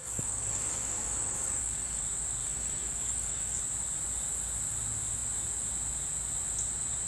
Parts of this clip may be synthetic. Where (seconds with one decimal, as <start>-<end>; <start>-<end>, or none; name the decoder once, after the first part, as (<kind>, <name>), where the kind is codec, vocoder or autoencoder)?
0.0-2.0 (codec, DAC); 2.4-3.6